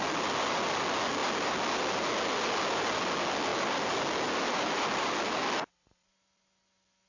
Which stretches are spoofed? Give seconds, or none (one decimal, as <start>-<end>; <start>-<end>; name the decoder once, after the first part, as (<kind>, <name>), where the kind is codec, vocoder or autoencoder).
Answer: none

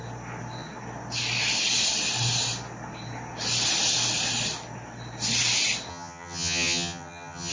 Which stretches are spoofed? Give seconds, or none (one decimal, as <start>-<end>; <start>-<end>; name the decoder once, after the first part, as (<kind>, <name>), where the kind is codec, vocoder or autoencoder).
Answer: 5.9-7.5 (vocoder, HiFi-GAN)

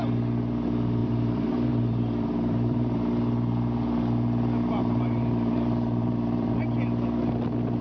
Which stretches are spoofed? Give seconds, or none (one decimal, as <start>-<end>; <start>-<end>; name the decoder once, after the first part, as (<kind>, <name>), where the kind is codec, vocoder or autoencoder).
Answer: 1.0-3.0 (vocoder, BigVGAN v2); 4.8-6.5